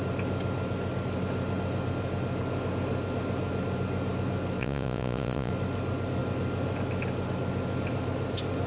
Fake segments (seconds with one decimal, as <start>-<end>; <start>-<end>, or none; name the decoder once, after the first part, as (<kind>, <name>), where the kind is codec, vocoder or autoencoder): 4.6-5.5 (vocoder, Vocos)

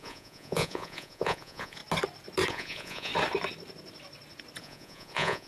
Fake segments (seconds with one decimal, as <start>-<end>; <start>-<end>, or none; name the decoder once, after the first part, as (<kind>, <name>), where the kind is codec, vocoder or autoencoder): 0.0-1.8 (vocoder, Vocos); 2.5-3.1; 4.6-5.5

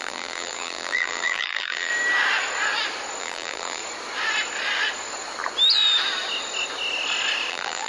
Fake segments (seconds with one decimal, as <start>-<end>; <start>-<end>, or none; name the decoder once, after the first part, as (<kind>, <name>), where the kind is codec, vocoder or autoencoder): 0.0-1.9 (vocoder, BigVGAN v2); 3.2-3.8; 7.5-7.9